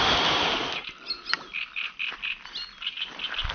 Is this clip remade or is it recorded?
recorded